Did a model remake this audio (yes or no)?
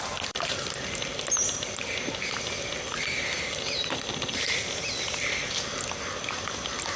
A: no